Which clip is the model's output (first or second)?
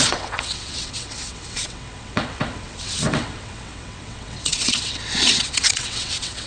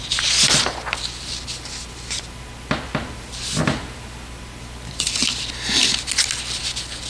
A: first